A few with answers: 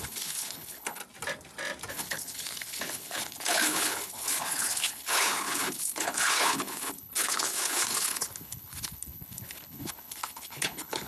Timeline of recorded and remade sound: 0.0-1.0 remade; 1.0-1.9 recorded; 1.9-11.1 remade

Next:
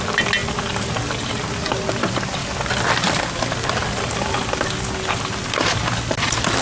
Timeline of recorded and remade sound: 0.0-6.6 recorded